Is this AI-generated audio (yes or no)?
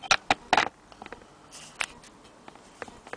no